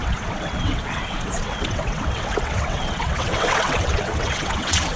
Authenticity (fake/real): fake